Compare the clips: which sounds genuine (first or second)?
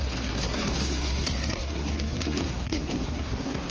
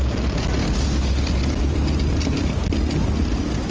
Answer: second